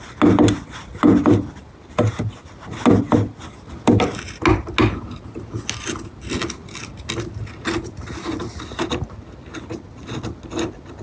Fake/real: real